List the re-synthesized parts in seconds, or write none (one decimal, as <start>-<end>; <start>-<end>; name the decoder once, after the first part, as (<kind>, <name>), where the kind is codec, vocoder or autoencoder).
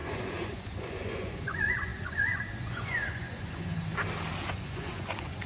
0.0-3.9 (vocoder, Vocos); 4.5-5.5